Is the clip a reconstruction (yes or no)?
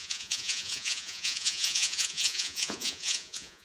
yes